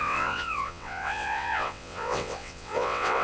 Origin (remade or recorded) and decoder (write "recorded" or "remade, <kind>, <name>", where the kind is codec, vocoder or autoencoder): remade, vocoder, WaveNeXt